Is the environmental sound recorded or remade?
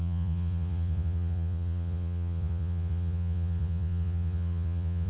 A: remade